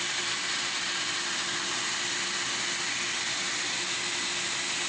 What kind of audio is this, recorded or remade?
recorded